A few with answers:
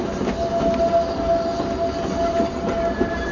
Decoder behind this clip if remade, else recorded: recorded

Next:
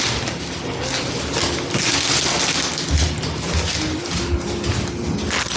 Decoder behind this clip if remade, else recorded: recorded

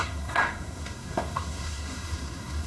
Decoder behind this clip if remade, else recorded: remade, codec, SNAC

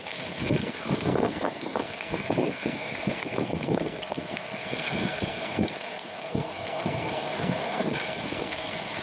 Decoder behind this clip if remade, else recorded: remade, codec, SNAC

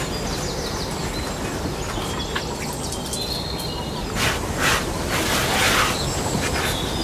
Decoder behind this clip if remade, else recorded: recorded